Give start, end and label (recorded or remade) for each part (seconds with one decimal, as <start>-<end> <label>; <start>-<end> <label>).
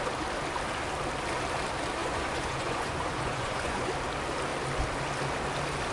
0.0-2.0 recorded; 2.0-3.9 remade; 3.9-5.9 recorded